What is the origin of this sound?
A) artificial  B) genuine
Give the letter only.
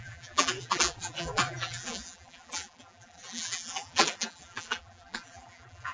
A